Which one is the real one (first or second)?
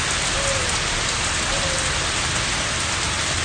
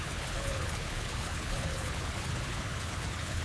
first